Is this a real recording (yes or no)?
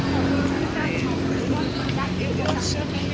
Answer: yes